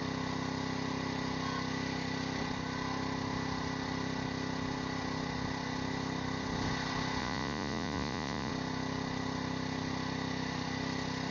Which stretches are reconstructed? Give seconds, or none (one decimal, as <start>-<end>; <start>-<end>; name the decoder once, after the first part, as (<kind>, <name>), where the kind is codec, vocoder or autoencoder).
7.2-8.5 (vocoder, Vocos)